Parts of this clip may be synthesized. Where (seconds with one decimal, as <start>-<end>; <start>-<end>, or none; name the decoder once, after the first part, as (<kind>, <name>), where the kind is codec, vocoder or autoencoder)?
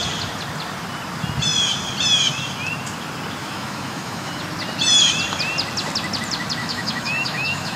3.4-4.4 (autoencoder, DAC-VAE); 6.6-7.8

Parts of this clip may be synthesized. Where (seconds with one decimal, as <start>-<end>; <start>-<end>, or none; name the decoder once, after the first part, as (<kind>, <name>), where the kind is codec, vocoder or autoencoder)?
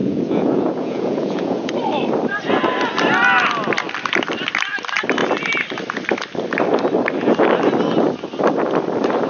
0.0-1.7 (vocoder, Vocos)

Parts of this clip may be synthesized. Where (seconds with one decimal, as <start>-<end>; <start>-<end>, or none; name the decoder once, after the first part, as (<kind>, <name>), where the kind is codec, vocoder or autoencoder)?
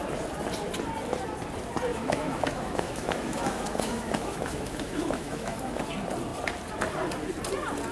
1.9-5.8 (autoencoder, DAC-VAE)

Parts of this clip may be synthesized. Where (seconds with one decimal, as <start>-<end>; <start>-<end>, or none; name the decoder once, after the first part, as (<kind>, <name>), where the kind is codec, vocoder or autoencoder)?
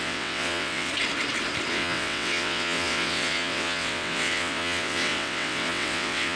0.0-0.9 (vocoder, WaveNeXt); 1.7-6.4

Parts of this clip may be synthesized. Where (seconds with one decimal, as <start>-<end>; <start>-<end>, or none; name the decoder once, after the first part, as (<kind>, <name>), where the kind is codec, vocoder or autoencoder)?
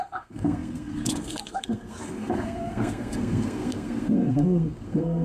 0.0-5.2 (codec, SNAC)